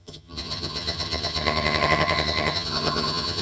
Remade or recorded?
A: remade